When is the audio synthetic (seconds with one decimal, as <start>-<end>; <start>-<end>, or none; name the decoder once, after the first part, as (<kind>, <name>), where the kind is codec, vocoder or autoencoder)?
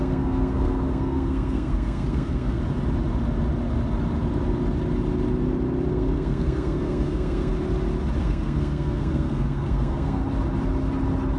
0.0-2.6 (codec, SNAC); 5.9-7.5; 8.2-10.2